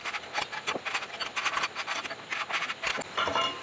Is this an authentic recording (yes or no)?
yes